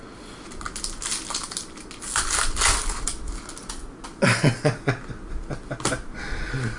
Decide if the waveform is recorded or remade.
recorded